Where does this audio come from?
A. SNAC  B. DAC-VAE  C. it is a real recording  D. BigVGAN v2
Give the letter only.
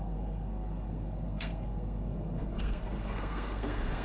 A